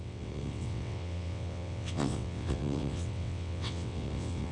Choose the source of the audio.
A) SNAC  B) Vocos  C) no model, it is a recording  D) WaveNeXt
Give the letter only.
D